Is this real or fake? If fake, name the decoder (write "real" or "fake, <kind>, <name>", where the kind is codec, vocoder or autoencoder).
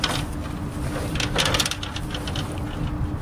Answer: real